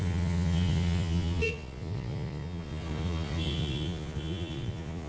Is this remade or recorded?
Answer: remade